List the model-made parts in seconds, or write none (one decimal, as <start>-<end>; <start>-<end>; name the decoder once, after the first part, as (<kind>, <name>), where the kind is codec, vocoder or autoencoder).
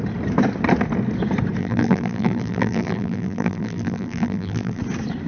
1.6-4.8 (vocoder, BigVGAN v2)